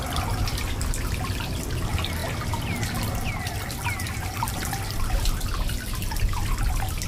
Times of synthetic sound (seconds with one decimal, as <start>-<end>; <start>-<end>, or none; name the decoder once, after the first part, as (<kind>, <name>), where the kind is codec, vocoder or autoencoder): none